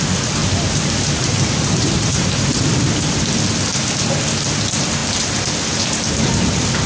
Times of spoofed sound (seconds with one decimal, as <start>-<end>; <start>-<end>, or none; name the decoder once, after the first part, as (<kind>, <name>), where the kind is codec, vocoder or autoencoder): 0.4-2.7 (vocoder, BigVGAN v2); 5.0-5.5